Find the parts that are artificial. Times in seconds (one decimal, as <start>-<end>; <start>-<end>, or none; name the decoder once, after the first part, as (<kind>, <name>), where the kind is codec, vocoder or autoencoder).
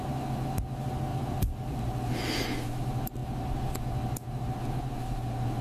1.1-1.8 (vocoder, BigVGAN v2); 3.2-3.8